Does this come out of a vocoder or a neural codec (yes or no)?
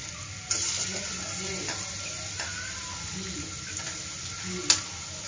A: no